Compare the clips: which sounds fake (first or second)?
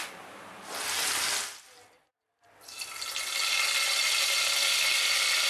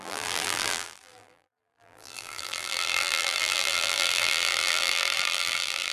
second